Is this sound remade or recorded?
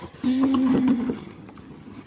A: remade